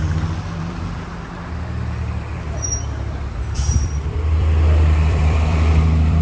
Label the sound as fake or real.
fake